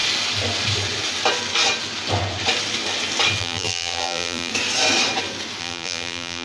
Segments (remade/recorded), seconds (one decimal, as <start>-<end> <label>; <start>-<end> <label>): 0.0-3.4 recorded; 3.4-4.5 remade; 4.5-5.6 recorded; 5.6-6.4 remade